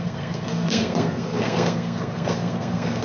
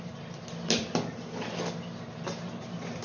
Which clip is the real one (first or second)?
second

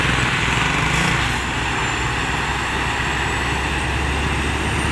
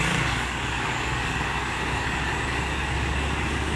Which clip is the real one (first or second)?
first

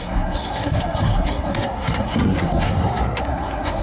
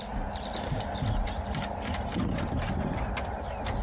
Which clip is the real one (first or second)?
second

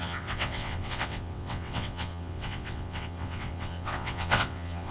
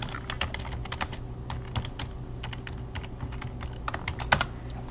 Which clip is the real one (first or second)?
second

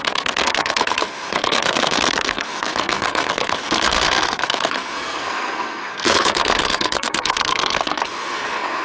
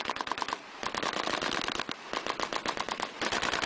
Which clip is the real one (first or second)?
second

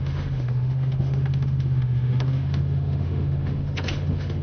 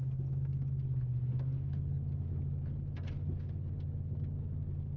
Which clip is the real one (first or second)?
second